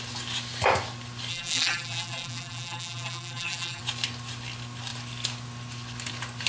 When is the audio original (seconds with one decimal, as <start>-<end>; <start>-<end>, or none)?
0.0-1.3; 3.8-6.5